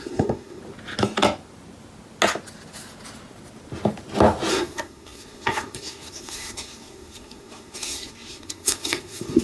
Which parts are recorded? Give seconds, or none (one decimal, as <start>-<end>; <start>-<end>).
0.6-4.5